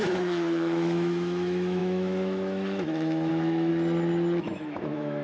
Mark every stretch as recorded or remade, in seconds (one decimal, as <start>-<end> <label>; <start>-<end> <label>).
0.0-3.7 remade; 3.7-4.4 recorded; 4.4-5.2 remade